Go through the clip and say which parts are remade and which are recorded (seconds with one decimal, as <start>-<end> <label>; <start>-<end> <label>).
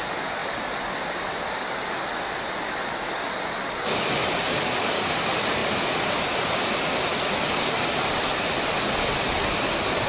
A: 0.0-10.1 recorded